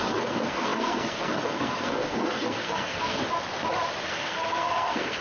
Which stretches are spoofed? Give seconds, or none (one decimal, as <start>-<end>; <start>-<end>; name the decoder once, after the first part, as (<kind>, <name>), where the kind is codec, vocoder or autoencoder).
0.0-3.2 (codec, SNAC); 4.1-5.2